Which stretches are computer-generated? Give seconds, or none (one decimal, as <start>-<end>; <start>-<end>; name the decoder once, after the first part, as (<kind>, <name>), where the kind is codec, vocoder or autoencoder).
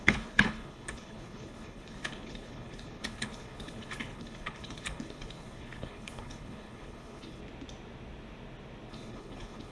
0.0-7.4 (codec, HILCodec); 8.9-9.7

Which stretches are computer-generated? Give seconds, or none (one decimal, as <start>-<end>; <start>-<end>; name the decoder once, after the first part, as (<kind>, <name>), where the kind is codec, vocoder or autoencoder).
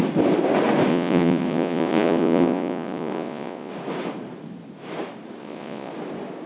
0.9-3.7 (vocoder, Vocos); 5.4-5.9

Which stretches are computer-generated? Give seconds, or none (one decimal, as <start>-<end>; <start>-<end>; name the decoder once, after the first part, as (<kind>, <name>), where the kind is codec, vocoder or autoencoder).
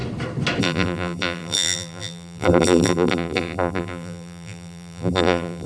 0.6-5.7 (vocoder, BigVGAN v2)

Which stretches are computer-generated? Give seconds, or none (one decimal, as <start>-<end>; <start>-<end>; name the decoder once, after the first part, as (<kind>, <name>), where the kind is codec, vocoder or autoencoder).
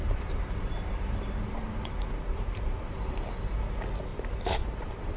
0.0-3.1 (vocoder, BigVGAN v2); 4.1-5.2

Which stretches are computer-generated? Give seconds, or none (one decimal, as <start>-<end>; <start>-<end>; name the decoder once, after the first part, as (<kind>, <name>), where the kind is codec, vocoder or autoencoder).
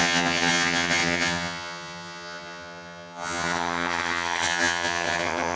0.0-5.6 (vocoder, HiFi-GAN)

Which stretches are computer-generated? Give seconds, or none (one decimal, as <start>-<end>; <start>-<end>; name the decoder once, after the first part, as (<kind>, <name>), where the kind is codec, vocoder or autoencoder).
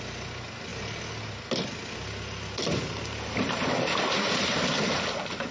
none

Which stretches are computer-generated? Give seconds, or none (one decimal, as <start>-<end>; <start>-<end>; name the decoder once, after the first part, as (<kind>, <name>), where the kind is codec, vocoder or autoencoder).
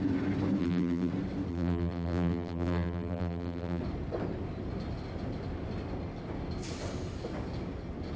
0.6-1.1 (vocoder, BigVGAN v2); 1.5-3.8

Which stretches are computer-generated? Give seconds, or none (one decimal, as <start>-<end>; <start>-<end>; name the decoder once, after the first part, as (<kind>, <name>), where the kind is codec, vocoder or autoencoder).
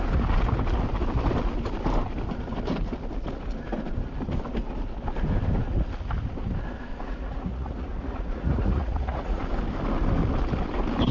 6.9-9.4 (vocoder, Vocos)